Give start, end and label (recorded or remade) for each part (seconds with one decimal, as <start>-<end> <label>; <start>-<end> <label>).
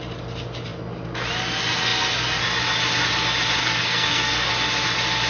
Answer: 0.0-3.6 recorded; 3.6-4.5 remade; 4.5-5.3 recorded